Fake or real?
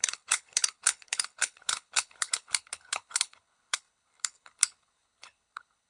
fake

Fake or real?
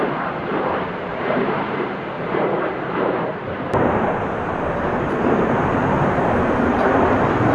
fake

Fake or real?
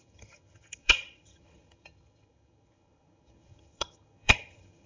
fake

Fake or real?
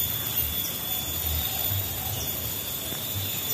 fake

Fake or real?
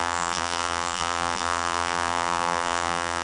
fake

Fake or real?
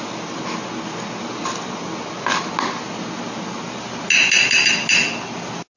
real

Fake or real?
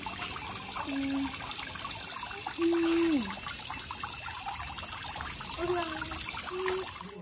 real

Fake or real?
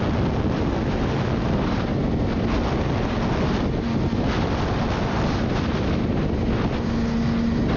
real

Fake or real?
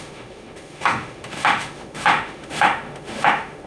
fake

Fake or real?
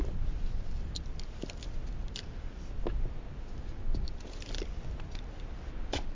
real